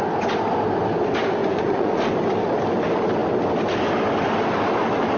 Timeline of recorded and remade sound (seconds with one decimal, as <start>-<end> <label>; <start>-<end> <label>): 0.0-1.4 recorded; 1.4-2.0 remade; 2.0-5.2 recorded